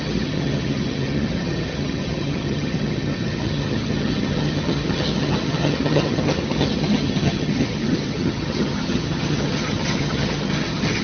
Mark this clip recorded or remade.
remade